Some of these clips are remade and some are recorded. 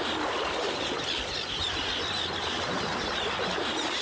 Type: recorded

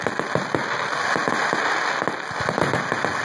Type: recorded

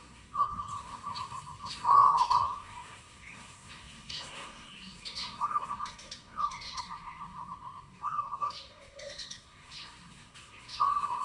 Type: remade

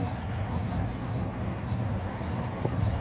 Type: remade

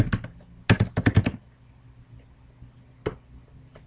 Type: recorded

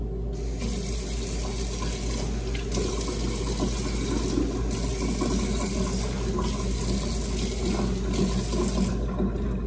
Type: recorded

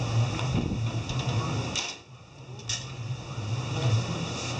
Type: recorded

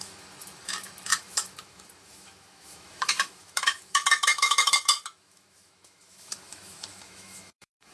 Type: remade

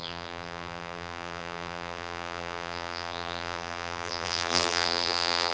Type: remade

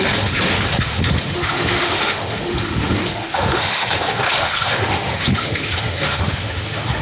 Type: remade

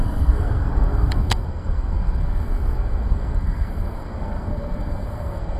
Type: remade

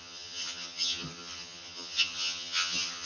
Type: remade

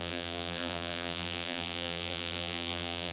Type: remade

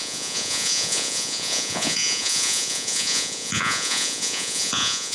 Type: remade